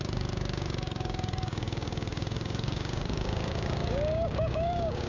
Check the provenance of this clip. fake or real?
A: fake